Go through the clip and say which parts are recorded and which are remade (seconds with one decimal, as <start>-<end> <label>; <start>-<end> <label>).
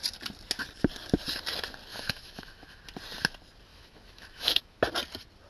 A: 0.0-1.9 recorded; 1.9-2.8 remade; 2.8-3.7 recorded; 3.7-4.8 remade; 4.8-5.5 recorded